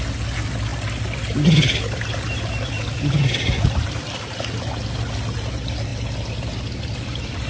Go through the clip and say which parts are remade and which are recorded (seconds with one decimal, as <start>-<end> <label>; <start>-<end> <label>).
0.0-7.5 recorded